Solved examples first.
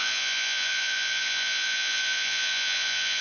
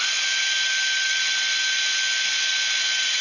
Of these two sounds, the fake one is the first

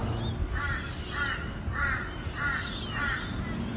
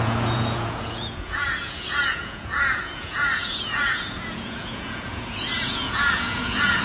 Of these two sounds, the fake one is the second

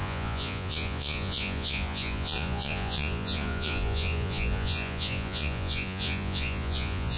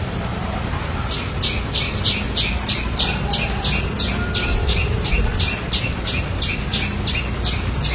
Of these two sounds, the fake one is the first